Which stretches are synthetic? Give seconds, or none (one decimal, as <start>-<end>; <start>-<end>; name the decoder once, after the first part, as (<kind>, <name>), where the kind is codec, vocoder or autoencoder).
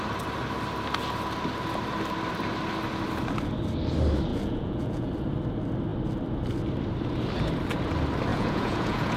4.3-5.1 (vocoder, Vocos); 8.3-9.2